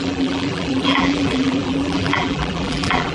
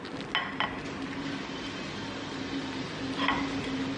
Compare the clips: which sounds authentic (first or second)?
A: second